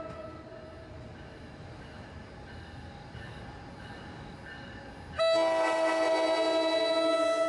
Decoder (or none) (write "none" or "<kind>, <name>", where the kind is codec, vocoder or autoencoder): none